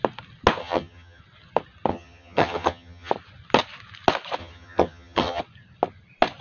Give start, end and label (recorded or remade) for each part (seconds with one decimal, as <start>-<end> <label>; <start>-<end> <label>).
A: 0.0-0.6 recorded; 0.6-1.2 remade; 1.2-1.9 recorded; 1.9-3.1 remade; 3.1-4.4 recorded; 4.4-5.4 remade; 5.4-6.4 recorded